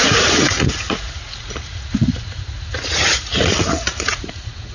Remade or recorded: remade